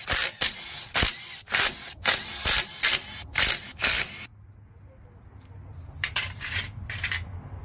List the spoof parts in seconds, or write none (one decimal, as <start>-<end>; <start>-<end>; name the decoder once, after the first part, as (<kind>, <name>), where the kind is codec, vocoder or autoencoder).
none